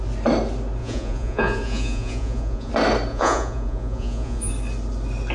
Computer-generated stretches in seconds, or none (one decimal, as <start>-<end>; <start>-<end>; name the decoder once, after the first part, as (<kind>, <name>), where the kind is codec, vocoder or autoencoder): 0.8-2.7 (vocoder, Vocos); 3.1-4.5